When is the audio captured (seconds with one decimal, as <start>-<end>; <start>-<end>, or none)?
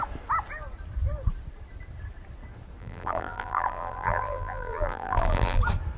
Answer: 0.0-2.8; 5.6-6.0